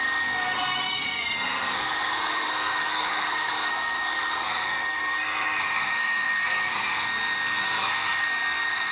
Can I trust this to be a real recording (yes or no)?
no